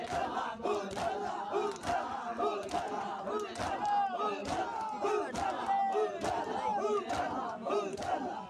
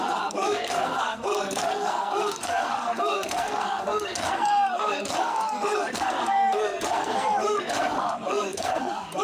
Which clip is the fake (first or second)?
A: second